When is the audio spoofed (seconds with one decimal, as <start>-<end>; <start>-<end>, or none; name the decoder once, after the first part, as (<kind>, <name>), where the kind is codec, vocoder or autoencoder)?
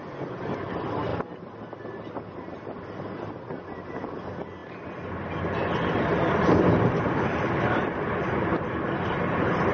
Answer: none